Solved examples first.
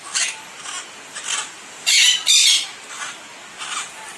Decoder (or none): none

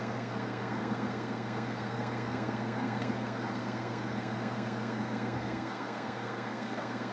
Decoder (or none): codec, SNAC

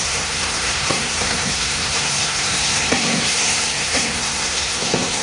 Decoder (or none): codec, SNAC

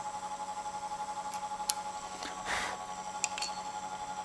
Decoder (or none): none